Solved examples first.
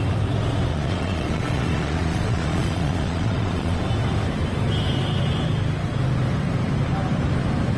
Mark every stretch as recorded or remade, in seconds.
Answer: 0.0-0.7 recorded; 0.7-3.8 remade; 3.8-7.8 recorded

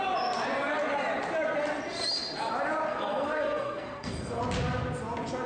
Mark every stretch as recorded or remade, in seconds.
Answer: 0.0-2.9 recorded; 2.9-4.4 remade; 4.4-5.5 recorded

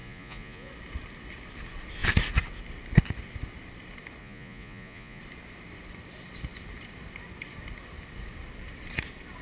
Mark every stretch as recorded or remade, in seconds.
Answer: 0.0-0.7 remade; 0.7-4.2 recorded; 4.2-5.2 remade; 5.2-9.4 recorded

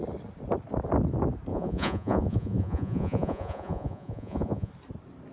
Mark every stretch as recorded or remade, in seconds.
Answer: 0.0-1.5 recorded; 1.5-4.7 remade; 4.7-5.3 recorded

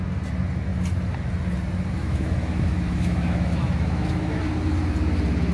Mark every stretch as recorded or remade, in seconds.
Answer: 0.0-2.0 recorded; 2.0-4.4 remade; 4.4-5.5 recorded

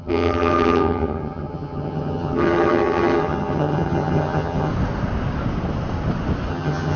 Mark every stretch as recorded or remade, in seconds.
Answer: 0.0-4.7 remade; 4.7-6.5 recorded; 6.5-7.0 remade

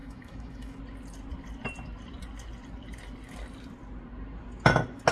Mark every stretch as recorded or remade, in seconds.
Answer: 0.0-0.8 remade; 0.8-5.1 recorded

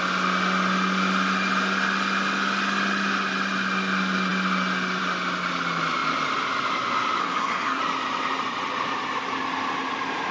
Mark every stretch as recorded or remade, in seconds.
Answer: 0.0-7.2 recorded; 7.2-7.8 remade; 7.8-10.3 recorded